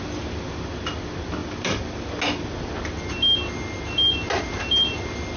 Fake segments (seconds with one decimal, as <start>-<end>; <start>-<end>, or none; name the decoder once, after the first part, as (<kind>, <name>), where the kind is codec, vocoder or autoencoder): none